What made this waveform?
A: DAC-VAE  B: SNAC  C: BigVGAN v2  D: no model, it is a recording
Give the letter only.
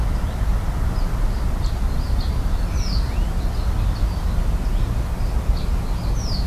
D